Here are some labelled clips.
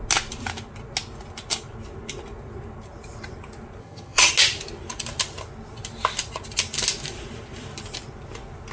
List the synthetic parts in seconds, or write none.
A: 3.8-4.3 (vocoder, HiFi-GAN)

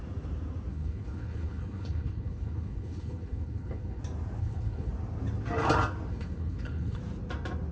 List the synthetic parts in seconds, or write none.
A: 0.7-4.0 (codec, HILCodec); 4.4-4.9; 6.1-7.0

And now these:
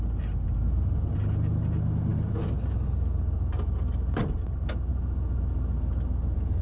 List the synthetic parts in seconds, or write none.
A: 4.9-5.4 (vocoder, Vocos)

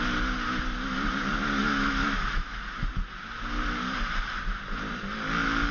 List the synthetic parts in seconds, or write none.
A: 1.6-2.6 (autoencoder, DAC-VAE)